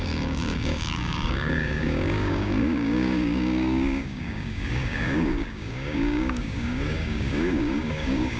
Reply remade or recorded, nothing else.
remade